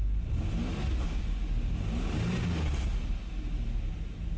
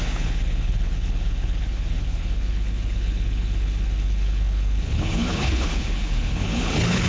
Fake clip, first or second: second